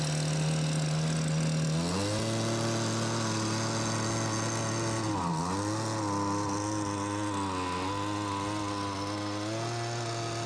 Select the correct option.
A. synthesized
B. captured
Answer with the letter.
B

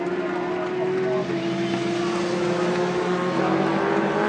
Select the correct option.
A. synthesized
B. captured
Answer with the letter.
B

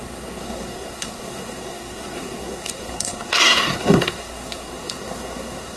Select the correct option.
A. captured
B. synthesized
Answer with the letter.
B